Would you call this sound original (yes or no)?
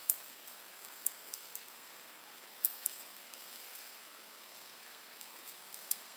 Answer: no